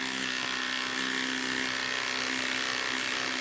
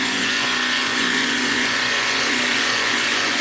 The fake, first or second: second